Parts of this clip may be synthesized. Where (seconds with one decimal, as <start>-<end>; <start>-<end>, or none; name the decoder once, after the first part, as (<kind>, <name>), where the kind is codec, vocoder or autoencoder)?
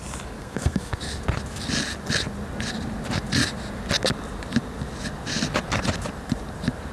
0.4-1.0 (codec, SNAC)